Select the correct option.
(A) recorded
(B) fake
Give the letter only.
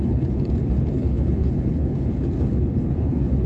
B